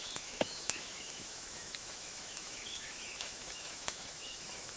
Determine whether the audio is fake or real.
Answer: fake